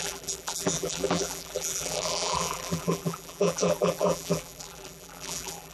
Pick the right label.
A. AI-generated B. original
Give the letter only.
A